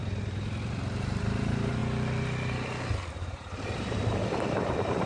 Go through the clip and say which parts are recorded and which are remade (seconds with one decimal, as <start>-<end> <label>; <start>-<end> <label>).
0.0-1.8 remade; 1.8-3.1 recorded; 3.1-5.1 remade

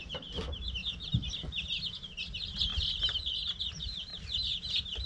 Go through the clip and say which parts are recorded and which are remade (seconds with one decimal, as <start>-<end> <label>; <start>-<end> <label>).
0.0-0.8 remade; 0.8-1.9 recorded; 1.9-2.7 remade; 2.7-3.6 recorded; 3.6-4.1 remade; 4.1-5.1 recorded

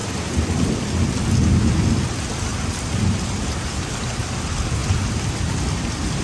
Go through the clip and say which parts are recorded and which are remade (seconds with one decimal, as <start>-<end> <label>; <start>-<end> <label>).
0.0-0.7 remade; 0.7-2.5 recorded; 2.5-3.9 remade; 3.9-6.2 recorded

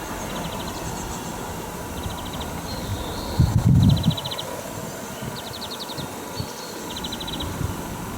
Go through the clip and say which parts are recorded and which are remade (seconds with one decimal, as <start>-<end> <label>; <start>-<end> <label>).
0.0-8.2 recorded

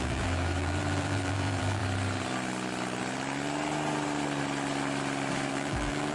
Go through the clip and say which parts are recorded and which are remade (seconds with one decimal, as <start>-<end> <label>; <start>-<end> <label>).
0.0-1.8 remade; 1.8-5.5 recorded; 5.5-6.1 remade

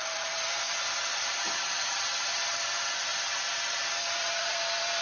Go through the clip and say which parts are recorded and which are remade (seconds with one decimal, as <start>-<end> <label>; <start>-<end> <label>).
0.0-5.0 remade